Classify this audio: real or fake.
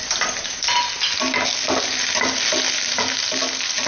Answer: real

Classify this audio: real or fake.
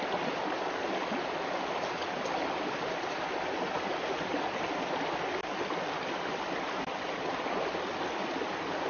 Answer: real